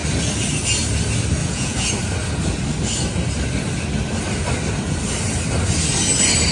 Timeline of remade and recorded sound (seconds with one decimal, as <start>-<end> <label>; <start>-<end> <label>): 0.0-1.4 recorded; 1.4-1.9 remade; 1.9-6.5 recorded